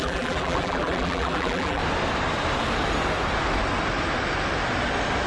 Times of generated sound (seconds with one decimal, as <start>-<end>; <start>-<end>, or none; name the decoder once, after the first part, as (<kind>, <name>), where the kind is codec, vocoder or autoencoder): 0.0-1.8 (vocoder, BigVGAN v2)